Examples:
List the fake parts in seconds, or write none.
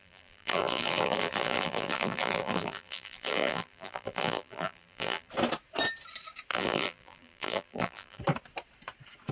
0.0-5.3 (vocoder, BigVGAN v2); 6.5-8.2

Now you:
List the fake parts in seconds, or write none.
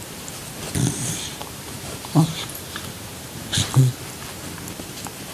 0.0-0.4 (vocoder, BigVGAN v2); 1.1-3.5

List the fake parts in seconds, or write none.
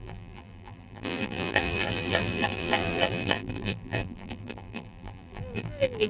0.0-6.1 (vocoder, BigVGAN v2)